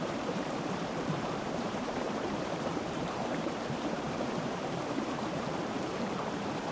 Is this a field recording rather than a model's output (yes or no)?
no